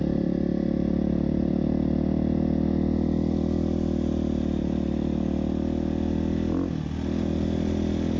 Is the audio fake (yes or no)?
no